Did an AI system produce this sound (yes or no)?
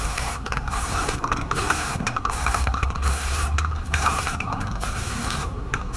yes